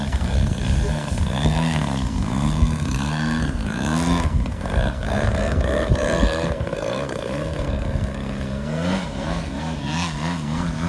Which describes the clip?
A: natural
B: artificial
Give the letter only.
B